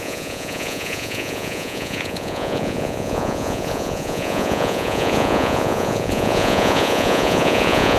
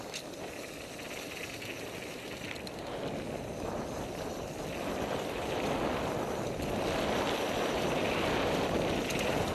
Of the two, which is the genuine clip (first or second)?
second